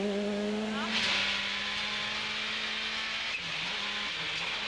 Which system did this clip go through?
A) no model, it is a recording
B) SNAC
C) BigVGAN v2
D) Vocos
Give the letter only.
A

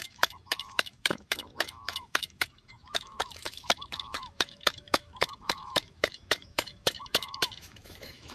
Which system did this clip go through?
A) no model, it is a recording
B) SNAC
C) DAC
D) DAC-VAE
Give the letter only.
D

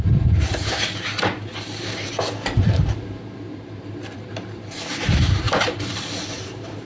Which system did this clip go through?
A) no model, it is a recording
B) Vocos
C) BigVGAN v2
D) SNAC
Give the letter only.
C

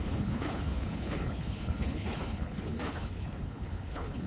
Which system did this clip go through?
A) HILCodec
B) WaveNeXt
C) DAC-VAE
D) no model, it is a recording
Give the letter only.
A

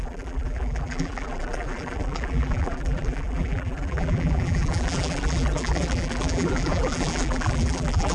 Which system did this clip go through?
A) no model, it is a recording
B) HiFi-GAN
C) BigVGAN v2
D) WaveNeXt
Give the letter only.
C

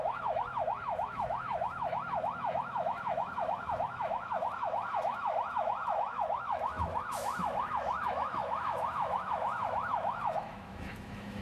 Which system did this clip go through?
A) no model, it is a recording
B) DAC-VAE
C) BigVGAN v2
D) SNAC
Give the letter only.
B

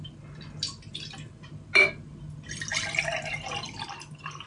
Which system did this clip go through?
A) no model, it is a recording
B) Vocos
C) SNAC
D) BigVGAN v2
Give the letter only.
A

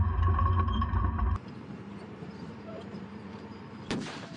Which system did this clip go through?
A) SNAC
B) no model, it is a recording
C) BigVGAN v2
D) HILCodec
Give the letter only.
C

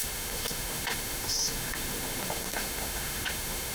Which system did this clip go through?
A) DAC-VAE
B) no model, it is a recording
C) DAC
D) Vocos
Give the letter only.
A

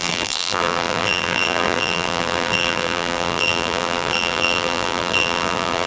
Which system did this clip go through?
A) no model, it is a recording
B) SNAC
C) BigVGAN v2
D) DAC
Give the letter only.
C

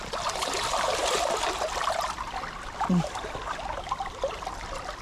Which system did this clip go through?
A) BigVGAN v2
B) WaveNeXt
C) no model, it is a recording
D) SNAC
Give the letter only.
C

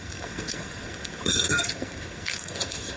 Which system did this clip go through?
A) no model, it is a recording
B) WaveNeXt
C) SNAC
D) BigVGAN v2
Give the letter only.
C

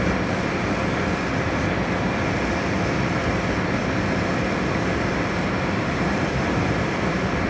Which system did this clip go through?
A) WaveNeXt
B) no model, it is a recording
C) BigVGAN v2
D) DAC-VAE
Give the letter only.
C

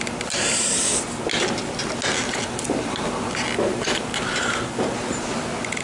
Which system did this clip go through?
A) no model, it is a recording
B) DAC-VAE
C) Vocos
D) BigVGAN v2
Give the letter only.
A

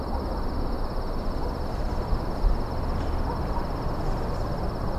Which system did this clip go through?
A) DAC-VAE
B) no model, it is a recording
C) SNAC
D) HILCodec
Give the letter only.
B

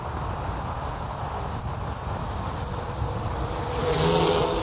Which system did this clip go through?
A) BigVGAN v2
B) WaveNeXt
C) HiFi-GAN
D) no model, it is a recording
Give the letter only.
D